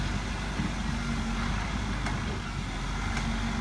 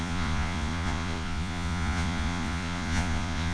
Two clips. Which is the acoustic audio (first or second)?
first